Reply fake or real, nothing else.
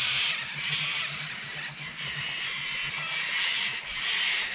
real